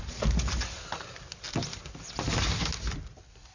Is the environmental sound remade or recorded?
recorded